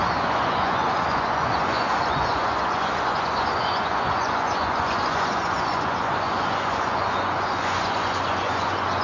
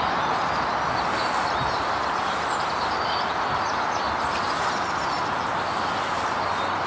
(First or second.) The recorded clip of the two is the second